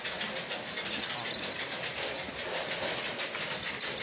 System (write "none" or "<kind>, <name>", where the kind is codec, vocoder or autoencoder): none